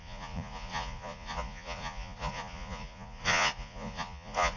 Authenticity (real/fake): fake